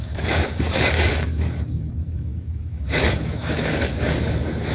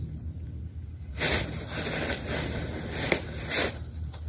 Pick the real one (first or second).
second